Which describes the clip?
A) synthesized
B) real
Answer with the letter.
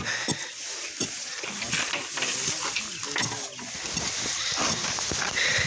B